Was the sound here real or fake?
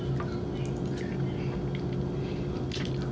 real